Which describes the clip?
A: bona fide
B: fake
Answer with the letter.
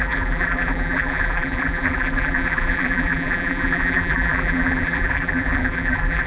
B